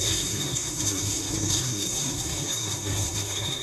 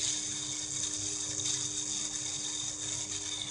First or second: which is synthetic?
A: first